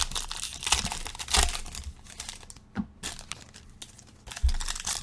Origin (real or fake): real